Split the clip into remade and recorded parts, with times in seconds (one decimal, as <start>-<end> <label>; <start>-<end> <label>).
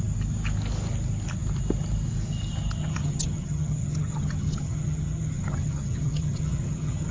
0.0-2.8 recorded; 2.8-7.1 remade